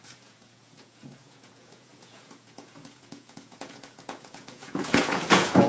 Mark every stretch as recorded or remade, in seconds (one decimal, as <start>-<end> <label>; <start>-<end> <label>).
0.0-5.7 remade

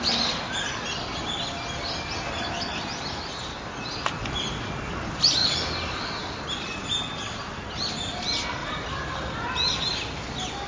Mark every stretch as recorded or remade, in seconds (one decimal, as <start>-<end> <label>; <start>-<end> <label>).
0.0-10.7 recorded